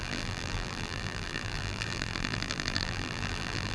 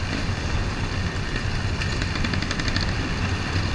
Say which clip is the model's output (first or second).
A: first